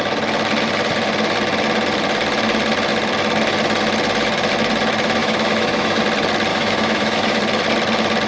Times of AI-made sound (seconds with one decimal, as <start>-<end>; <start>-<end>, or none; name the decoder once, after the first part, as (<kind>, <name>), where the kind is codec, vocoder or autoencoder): 5.2-6.0 (autoencoder, DAC-VAE); 6.5-7.4